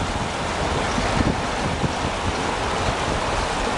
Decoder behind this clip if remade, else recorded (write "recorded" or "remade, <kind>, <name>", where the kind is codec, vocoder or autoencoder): recorded